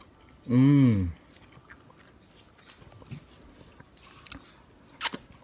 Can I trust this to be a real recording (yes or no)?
yes